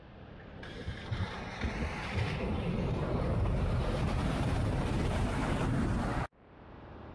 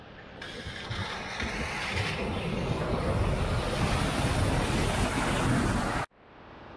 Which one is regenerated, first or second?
first